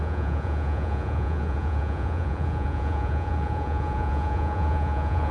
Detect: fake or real fake